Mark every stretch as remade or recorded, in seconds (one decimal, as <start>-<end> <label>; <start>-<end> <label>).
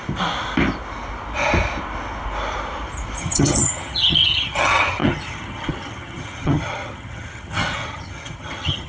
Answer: 0.0-3.2 recorded; 3.2-8.9 remade